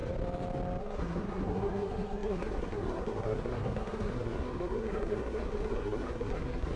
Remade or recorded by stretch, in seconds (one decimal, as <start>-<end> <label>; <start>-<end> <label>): 0.0-0.8 recorded; 0.8-6.8 remade